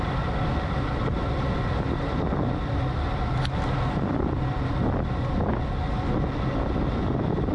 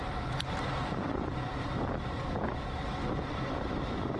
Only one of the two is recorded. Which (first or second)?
first